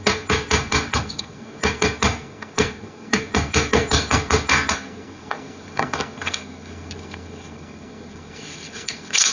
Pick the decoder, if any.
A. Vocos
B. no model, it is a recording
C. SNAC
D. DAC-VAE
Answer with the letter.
C